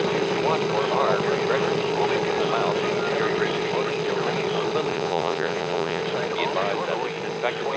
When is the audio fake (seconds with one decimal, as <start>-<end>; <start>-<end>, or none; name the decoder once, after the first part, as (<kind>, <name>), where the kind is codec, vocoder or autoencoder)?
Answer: 4.9-6.0 (vocoder, Vocos)